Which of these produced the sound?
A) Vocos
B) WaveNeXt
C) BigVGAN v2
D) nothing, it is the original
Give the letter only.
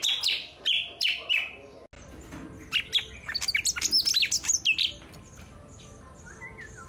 D